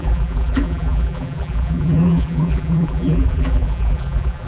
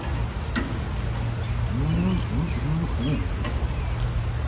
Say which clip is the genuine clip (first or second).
second